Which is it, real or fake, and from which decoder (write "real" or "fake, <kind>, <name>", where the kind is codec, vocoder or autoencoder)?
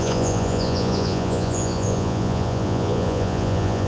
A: fake, vocoder, Vocos